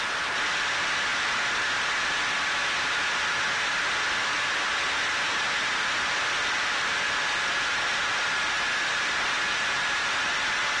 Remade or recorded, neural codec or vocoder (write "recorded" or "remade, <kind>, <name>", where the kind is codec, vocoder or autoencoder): remade, vocoder, BigVGAN v2